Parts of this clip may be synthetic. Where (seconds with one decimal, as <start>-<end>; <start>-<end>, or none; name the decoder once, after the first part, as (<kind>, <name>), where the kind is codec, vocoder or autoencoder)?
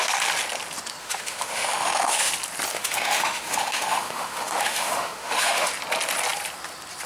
1.0-2.3 (autoencoder, DAC-VAE); 2.7-5.7